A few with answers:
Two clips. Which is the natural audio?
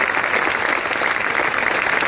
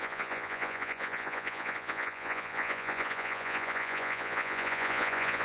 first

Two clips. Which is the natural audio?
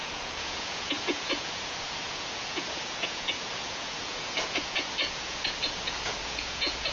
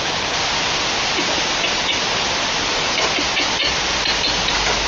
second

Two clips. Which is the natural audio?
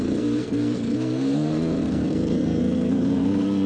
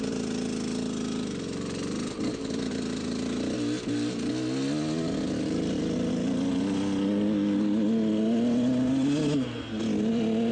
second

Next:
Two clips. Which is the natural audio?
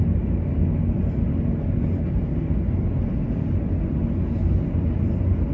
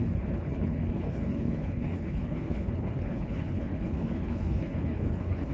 first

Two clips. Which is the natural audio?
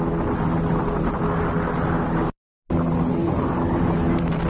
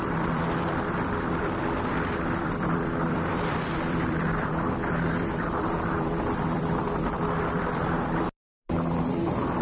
first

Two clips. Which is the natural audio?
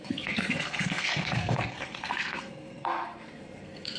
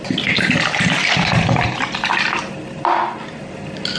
second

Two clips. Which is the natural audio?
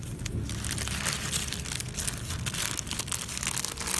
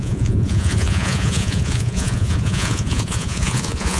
first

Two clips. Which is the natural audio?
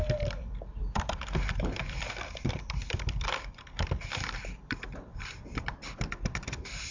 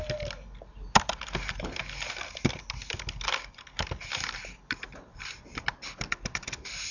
second